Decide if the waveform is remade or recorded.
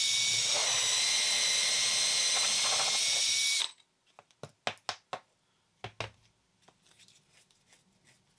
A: recorded